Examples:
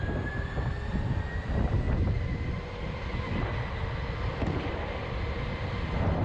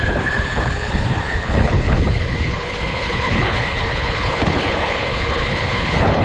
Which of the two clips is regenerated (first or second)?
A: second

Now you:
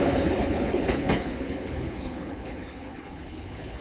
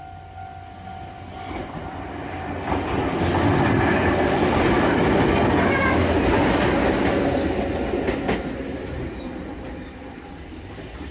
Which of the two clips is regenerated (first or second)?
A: first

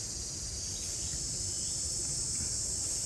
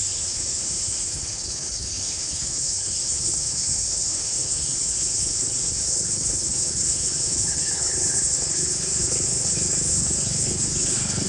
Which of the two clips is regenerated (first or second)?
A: second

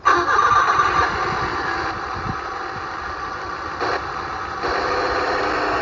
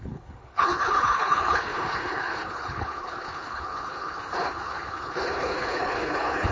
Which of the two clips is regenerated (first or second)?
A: second